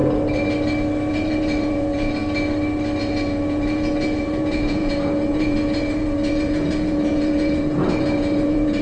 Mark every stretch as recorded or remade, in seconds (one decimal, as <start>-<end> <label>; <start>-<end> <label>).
0.0-1.1 recorded; 1.1-2.2 remade; 2.2-3.0 recorded; 3.0-8.8 remade